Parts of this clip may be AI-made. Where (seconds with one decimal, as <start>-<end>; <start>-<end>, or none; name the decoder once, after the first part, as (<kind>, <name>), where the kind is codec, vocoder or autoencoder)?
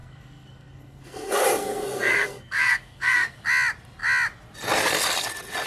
0.0-3.4 (codec, SNAC)